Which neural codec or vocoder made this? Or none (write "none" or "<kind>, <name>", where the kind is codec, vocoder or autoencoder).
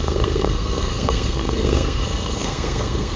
codec, SNAC